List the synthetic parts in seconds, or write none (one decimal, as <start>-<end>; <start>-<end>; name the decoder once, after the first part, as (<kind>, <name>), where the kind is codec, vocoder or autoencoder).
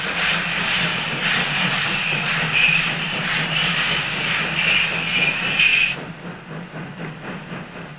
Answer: 0.9-3.2 (vocoder, BigVGAN v2); 5.7-7.0